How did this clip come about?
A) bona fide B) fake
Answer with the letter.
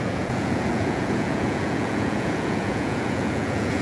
B